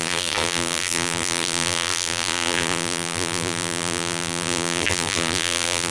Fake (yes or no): yes